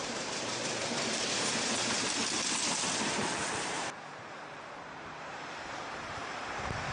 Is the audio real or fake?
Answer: fake